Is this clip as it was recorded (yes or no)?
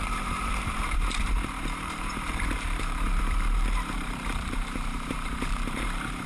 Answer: no